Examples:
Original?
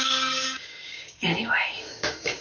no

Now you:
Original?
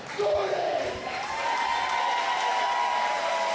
yes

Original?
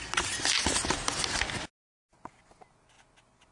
yes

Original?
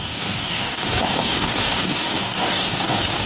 no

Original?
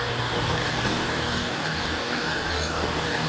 no